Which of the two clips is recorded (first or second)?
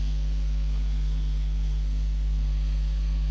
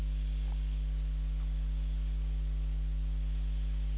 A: second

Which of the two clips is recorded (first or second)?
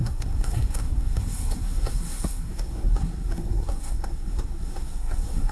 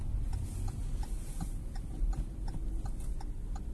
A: second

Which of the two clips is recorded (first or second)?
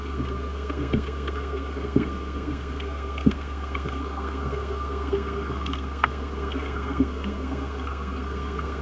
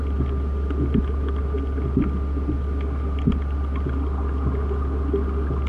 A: second